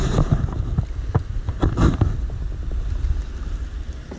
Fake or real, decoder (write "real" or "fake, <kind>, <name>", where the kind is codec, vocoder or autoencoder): real